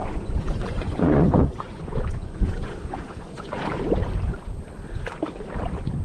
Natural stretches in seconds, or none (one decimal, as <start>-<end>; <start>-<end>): 3.6-6.0